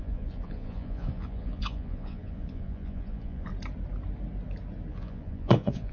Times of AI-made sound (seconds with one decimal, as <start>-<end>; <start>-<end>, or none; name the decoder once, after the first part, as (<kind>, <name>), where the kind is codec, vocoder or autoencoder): 0.0-3.5 (vocoder, Vocos); 4.9-5.9